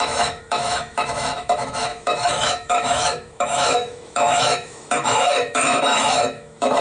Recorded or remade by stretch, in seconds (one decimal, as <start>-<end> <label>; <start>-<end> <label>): 0.0-6.8 remade